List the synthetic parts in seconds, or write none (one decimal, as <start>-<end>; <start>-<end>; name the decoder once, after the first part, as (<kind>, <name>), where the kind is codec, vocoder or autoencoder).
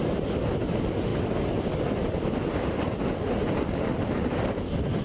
none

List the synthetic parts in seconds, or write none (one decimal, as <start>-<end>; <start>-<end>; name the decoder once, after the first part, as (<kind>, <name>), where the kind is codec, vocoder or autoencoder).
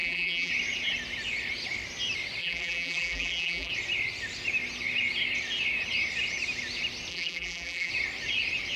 0.0-0.5 (vocoder, BigVGAN v2); 2.4-3.7; 7.1-7.9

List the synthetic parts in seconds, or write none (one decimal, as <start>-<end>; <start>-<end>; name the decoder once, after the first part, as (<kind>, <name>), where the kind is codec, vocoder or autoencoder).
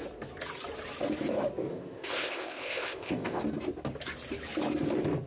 1.7-3.4 (codec, ZipCodec)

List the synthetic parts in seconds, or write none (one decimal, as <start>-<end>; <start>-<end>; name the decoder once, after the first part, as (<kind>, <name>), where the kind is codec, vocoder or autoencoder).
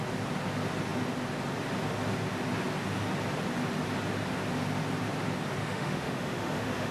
5.6-6.9 (autoencoder, DAC-VAE)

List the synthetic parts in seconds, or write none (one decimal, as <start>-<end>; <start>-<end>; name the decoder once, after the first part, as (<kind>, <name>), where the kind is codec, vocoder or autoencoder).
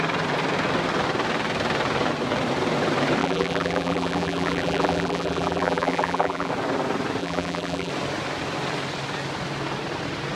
3.2-6.5 (vocoder, BigVGAN v2); 7.2-7.9